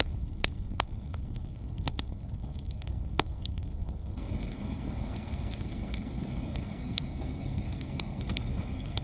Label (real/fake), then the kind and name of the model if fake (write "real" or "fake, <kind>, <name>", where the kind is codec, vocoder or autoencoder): fake, codec, SNAC